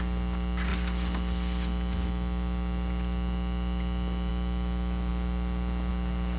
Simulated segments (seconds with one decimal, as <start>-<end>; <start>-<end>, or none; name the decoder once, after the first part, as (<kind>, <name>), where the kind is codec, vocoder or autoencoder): none